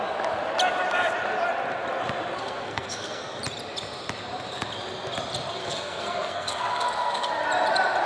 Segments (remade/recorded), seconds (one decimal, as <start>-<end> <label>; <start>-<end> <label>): 0.0-2.4 recorded; 2.4-3.4 remade; 3.4-5.6 recorded; 5.6-7.3 remade; 7.3-8.1 recorded